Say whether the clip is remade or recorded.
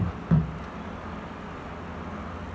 recorded